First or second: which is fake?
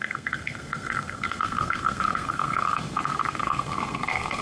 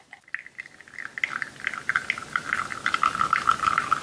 first